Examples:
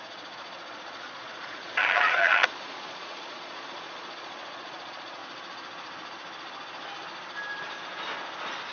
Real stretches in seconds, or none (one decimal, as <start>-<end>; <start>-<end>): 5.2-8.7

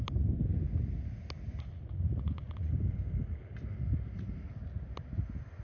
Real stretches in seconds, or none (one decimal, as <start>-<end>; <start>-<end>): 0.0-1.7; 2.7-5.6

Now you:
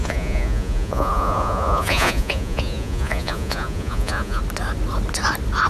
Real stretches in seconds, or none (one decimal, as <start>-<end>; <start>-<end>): 4.4-5.7

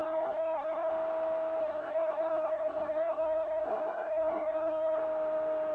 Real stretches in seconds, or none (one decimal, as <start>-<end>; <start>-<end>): 0.9-1.6; 5.0-5.7

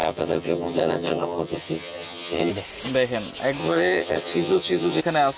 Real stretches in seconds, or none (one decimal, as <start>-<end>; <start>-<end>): 2.5-3.6; 5.0-5.4

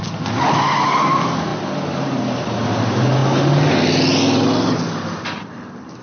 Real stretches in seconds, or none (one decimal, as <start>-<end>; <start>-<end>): 0.0-6.0

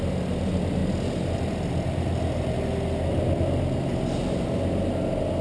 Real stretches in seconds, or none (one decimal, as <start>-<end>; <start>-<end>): 0.0-5.4

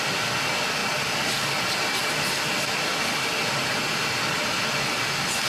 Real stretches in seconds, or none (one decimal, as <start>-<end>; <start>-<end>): 0.0-5.5